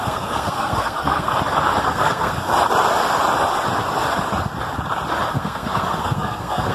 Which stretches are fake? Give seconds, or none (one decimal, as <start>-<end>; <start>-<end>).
0.0-1.3; 1.8-2.5; 5.3-6.7

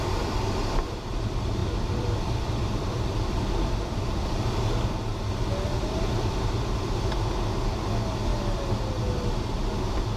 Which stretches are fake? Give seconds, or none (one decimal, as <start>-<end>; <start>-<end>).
1.6-4.4

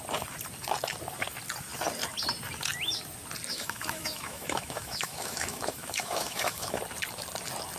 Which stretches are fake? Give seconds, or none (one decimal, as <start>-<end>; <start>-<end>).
3.5-6.8

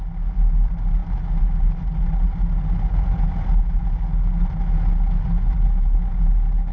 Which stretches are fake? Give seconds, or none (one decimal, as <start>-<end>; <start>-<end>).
none

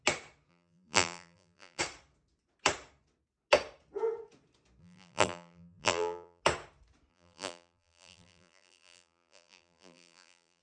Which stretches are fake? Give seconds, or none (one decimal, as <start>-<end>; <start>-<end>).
0.5-1.8; 4.8-6.4; 7.1-10.6

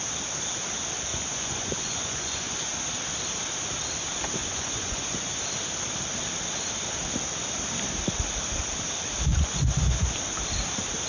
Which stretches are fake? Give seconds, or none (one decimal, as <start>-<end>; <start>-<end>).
1.1-2.7; 4.4-5.3; 9.3-10.1

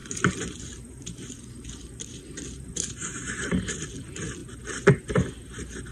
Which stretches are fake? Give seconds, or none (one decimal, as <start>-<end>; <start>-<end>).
0.0-3.5

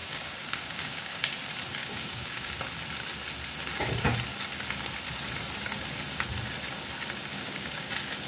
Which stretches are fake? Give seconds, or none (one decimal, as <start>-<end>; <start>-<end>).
0.0-1.2; 1.8-2.5; 7.3-7.9